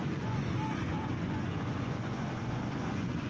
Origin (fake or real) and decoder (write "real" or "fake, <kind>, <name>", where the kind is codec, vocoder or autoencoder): fake, vocoder, Vocos